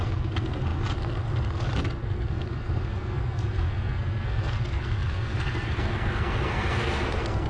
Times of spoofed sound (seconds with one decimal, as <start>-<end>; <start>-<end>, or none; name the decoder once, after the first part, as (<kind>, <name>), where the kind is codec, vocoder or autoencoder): 0.0-7.5 (codec, SNAC)